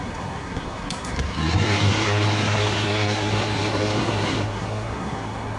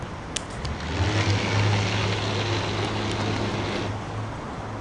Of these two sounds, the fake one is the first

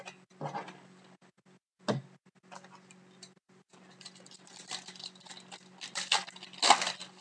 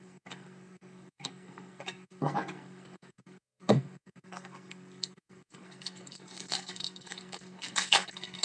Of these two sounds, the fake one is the second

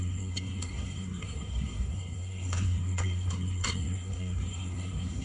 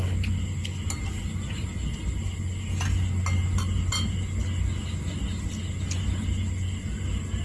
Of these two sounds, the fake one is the first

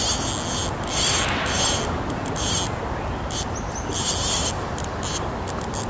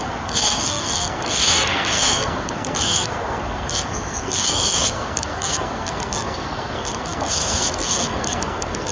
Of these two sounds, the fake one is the second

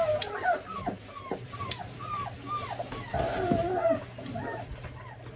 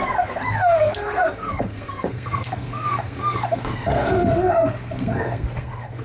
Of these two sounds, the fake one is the second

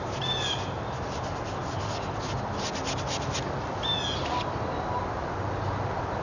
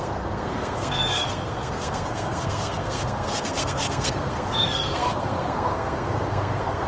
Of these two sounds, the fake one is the second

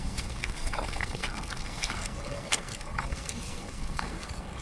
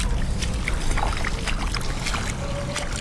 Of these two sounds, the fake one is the first